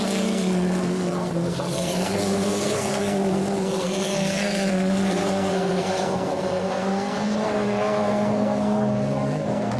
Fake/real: fake